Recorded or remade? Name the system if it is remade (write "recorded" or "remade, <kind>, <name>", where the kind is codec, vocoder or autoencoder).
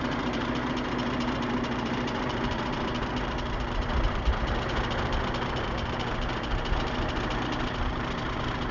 remade, vocoder, BigVGAN v2